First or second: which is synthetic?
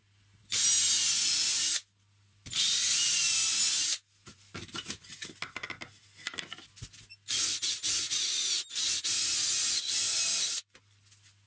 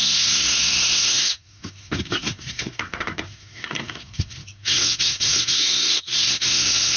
second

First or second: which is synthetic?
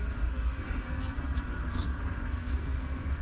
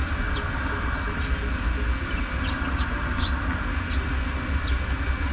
first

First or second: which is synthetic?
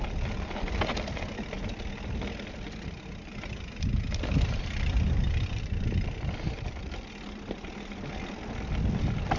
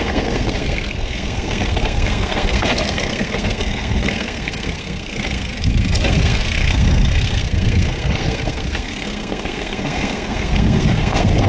second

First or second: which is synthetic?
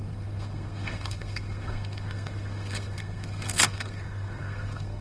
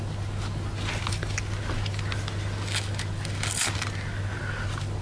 first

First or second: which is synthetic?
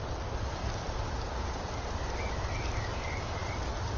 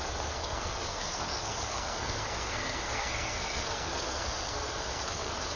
second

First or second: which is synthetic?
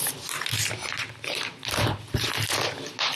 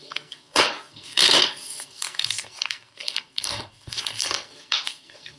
second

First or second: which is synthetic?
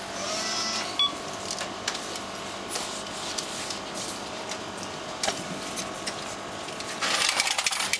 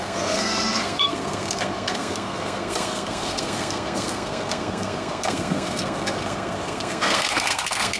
second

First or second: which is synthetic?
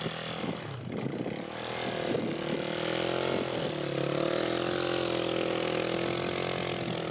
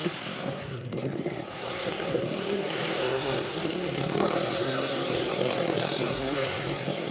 second